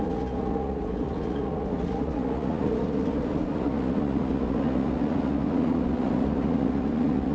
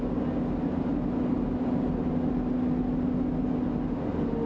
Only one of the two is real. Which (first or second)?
second